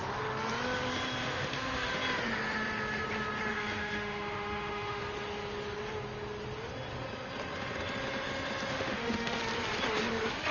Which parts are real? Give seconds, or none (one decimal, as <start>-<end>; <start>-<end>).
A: 0.0-1.2; 1.9-3.5; 5.0-8.7; 9.4-10.5